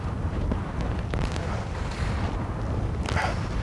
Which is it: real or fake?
fake